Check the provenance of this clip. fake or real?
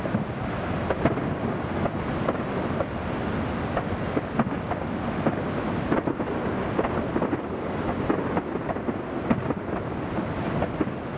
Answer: real